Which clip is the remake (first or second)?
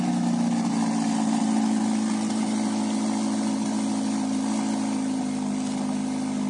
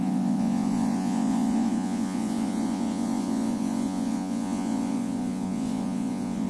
second